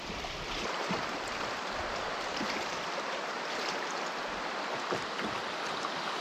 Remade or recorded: remade